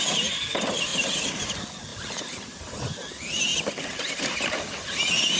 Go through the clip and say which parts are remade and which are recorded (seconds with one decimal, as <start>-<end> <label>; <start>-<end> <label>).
0.0-0.9 recorded; 0.9-1.4 remade; 1.4-1.9 recorded; 1.9-2.8 remade; 2.8-5.4 recorded